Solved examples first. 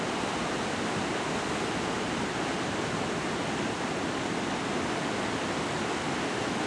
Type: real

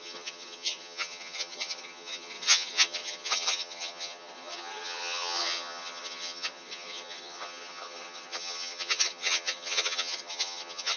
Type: fake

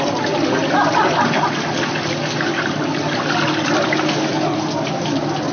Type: real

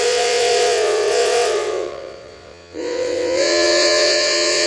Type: fake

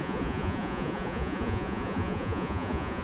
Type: fake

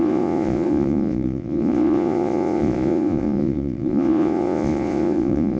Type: fake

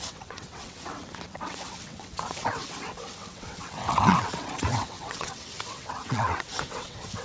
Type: fake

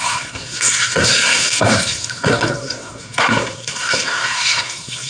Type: fake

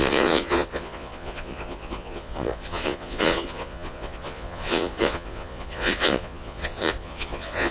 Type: fake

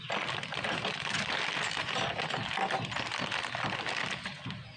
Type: real